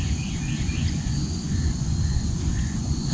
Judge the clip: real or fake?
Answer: fake